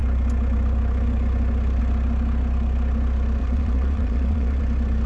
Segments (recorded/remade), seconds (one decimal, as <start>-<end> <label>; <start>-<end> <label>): 0.0-3.4 recorded; 3.4-4.6 remade; 4.6-5.1 recorded